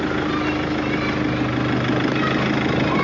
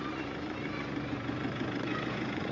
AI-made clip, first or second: second